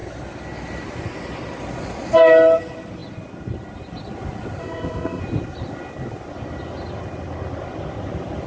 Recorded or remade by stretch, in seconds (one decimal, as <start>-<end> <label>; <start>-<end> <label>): 0.0-4.6 recorded; 4.6-5.2 remade; 5.2-8.5 recorded